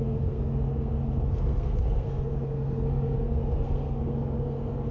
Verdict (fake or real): fake